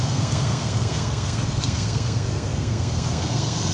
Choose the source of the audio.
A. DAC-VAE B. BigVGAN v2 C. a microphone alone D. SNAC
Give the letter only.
D